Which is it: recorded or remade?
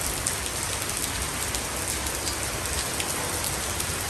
recorded